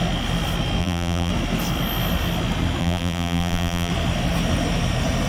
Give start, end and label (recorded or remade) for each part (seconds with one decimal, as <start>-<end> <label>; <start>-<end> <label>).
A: 0.0-0.8 recorded; 0.8-1.3 remade; 1.3-2.8 recorded; 2.8-3.9 remade; 3.9-5.3 recorded